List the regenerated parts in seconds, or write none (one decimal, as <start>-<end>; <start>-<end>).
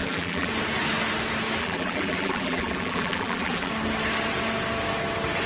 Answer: 0.0-0.5; 1.6-3.7